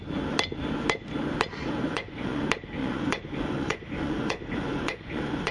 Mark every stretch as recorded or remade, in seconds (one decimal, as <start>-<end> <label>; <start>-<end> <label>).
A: 0.0-1.9 recorded; 1.9-2.4 remade; 2.4-2.8 recorded; 2.8-5.5 remade